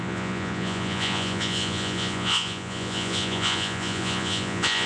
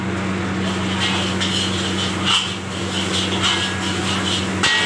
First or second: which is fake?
first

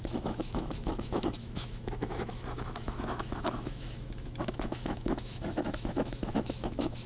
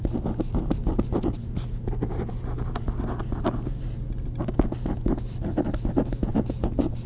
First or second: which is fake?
first